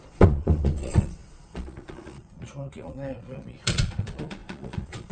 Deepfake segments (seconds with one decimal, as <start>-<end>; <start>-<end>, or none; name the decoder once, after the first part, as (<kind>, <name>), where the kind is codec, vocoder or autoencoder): 0.0-5.1 (vocoder, Vocos)